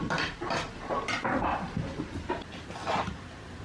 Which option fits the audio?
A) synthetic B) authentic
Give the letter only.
B